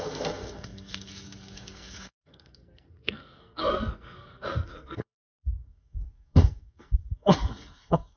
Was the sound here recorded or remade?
remade